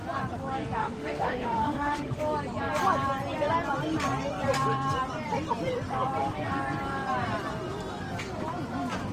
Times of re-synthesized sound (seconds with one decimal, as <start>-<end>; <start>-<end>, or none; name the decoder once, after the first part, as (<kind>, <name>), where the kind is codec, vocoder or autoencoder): 0.8-2.2 (autoencoder, DAC-VAE)